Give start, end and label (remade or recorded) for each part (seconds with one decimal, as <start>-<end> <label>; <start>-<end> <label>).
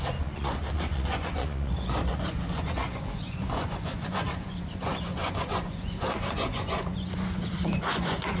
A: 0.0-8.4 remade